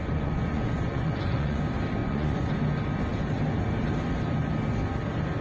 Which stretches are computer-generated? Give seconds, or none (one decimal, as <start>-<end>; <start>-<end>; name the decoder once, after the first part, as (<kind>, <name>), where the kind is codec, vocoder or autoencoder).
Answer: 0.0-1.6 (vocoder, Vocos); 2.0-2.5